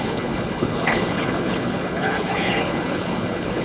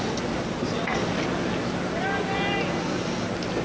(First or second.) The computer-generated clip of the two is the first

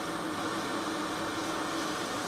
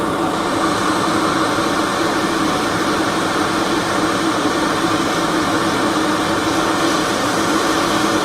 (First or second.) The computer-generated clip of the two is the second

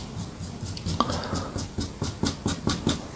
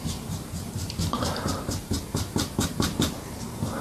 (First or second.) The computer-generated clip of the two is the second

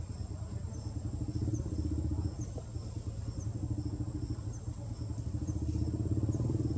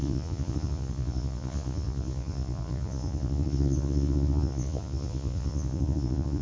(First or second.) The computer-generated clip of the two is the second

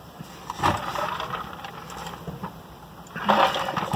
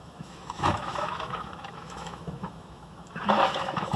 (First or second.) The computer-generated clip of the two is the second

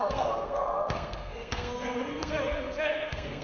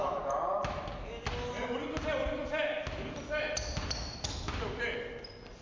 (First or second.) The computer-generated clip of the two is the first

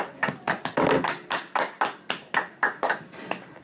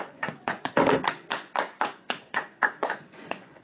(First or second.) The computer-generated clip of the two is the second